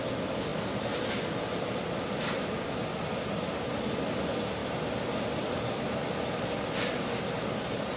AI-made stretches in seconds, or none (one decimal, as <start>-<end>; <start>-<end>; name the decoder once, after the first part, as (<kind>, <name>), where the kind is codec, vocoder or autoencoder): none